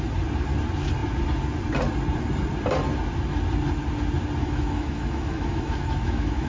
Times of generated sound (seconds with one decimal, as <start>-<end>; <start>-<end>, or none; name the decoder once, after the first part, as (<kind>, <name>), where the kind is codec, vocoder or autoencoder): 4.4-6.5 (autoencoder, DAC-VAE)